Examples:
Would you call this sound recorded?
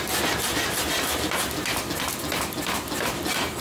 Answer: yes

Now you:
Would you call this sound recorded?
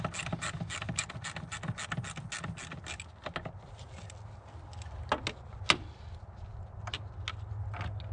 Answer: yes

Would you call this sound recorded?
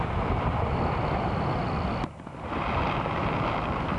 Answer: yes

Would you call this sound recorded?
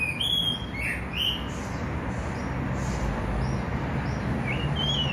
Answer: yes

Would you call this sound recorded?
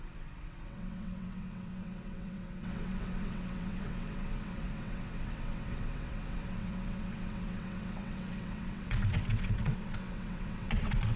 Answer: no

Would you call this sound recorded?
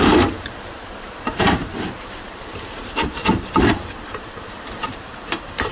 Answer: no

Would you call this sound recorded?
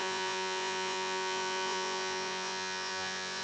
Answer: no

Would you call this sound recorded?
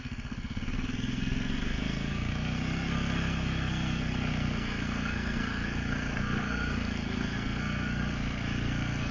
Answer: no